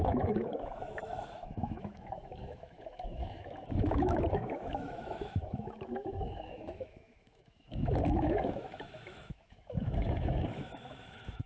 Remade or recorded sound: remade